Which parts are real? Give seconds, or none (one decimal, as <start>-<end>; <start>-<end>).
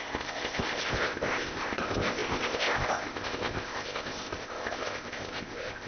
none